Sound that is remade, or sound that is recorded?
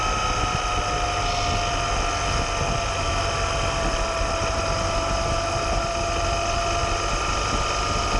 recorded